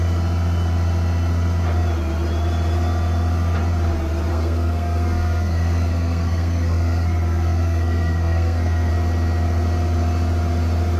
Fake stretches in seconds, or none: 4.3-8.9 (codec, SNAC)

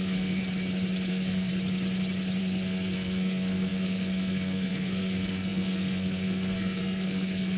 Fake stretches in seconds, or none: 0.0-0.4 (codec, SNAC); 1.1-1.5; 2.4-7.6

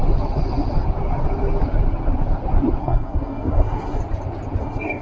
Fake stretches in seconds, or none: 2.8-4.0 (codec, SNAC); 4.6-5.0

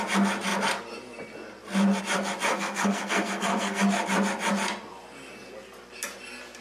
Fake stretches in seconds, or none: 2.5-3.8 (codec, SNAC)

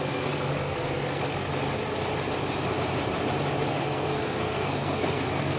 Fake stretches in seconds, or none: 0.0-1.5 (codec, SNAC); 3.7-5.6

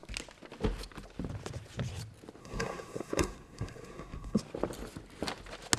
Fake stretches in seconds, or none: 2.4-4.4 (codec, SNAC)